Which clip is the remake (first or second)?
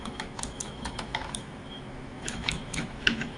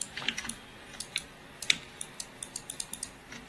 first